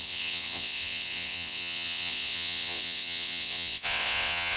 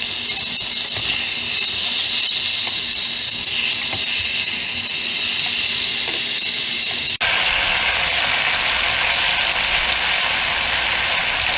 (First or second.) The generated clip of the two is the first